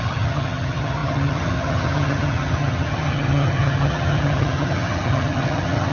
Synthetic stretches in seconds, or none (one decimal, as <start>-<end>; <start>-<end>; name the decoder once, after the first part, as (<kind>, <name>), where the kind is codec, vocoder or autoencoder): 0.0-5.9 (vocoder, HiFi-GAN)